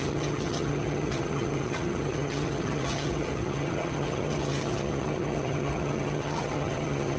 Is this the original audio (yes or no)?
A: no